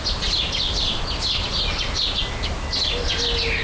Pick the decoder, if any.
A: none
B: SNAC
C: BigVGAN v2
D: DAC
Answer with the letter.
A